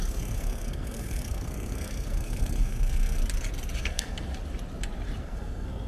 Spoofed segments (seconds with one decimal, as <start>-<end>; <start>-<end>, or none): 0.0-3.2; 3.8-4.3; 5.2-5.9